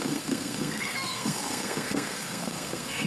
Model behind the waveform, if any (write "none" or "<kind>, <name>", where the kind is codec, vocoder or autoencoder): codec, SNAC